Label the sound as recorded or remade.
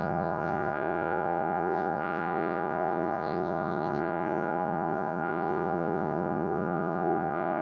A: remade